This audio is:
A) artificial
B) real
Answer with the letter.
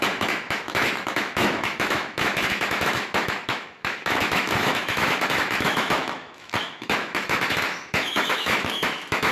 A